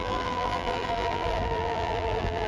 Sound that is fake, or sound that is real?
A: fake